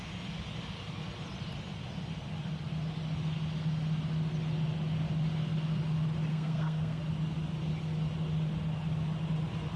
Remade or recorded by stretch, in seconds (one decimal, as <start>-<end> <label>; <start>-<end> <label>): 0.0-6.3 recorded; 6.3-7.0 remade; 7.0-9.8 recorded